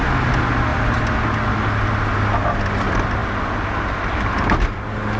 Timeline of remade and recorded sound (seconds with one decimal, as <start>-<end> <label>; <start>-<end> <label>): 0.0-5.2 recorded